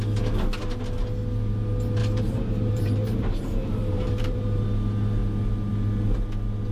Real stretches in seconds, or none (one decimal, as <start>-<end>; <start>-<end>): 0.0-2.0; 4.6-6.7